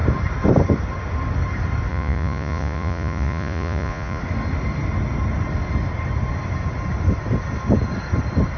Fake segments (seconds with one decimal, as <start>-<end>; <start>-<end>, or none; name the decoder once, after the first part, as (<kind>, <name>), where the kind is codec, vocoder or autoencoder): 1.9-4.2 (vocoder, Vocos)